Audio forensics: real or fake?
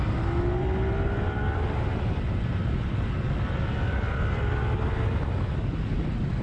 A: real